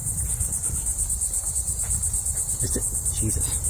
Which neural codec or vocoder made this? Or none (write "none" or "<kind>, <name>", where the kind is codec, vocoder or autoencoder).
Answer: none